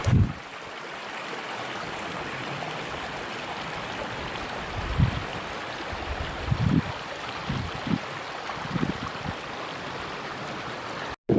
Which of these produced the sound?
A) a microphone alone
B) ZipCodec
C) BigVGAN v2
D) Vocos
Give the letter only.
A